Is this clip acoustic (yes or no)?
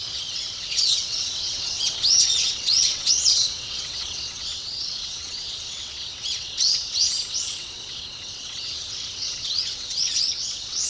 no